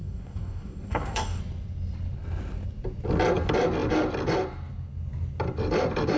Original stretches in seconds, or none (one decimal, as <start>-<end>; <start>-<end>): 1.4-6.2